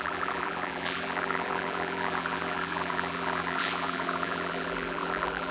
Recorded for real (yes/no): no